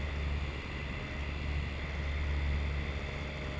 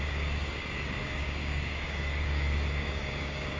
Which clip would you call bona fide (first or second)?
first